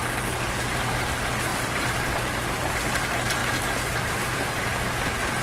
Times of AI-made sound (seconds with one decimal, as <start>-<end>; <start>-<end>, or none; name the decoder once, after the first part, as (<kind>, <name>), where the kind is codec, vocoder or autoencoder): 1.5-2.7 (vocoder, BigVGAN v2); 3.4-4.9